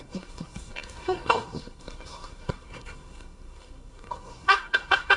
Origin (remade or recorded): remade